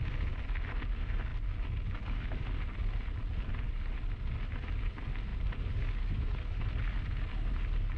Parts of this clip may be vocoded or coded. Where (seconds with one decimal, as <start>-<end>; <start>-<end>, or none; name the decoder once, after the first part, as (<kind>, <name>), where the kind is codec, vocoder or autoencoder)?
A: none

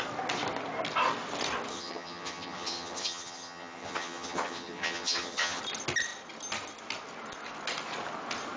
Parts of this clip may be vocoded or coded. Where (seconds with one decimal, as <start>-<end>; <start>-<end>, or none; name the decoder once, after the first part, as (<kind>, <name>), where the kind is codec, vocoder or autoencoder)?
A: 1.7-5.6 (vocoder, HiFi-GAN)

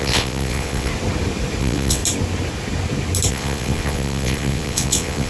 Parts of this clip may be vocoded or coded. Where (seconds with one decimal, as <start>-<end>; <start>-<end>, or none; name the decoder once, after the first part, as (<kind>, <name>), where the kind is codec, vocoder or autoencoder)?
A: 0.0-0.9 (vocoder, WaveNeXt); 1.6-2.0; 3.3-5.3

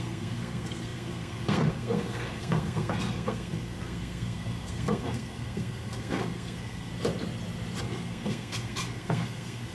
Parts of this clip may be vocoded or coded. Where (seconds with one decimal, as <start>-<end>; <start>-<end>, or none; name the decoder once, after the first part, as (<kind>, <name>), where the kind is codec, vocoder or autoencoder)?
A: 0.0-6.9 (codec, SNAC); 7.8-9.7

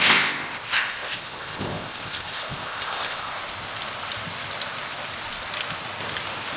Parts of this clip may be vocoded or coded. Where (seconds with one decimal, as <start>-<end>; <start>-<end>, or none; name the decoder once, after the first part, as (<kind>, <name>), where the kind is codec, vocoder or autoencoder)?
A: 0.0-3.4 (codec, ZipCodec)

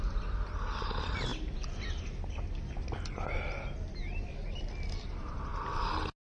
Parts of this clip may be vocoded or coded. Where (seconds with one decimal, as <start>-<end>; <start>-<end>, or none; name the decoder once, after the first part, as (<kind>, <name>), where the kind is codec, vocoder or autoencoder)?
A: none